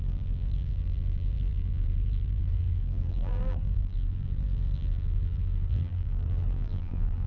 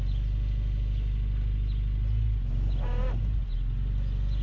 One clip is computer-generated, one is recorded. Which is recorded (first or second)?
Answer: second